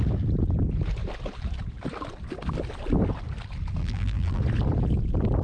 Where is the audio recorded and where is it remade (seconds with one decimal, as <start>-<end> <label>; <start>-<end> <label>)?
0.0-3.8 recorded; 3.8-4.4 remade; 4.4-5.4 recorded